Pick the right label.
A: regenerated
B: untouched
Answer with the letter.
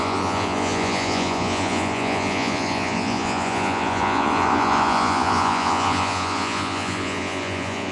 A